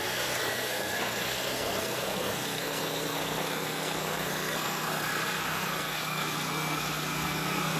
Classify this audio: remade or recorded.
remade